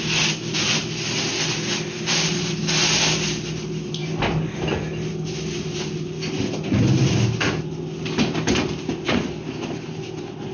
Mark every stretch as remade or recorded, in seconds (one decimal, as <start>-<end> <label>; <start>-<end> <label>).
0.0-10.5 recorded